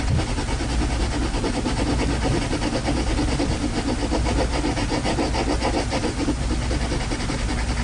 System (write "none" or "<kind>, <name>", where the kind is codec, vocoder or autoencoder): none